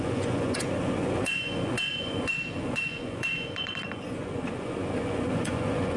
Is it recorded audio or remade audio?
remade